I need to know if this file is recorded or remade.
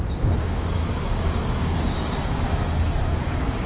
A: remade